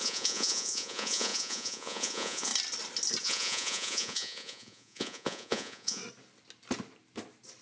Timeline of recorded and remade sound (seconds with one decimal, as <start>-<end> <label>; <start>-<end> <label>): 0.0-2.5 remade; 2.5-3.2 recorded; 3.2-6.0 remade; 6.0-7.6 recorded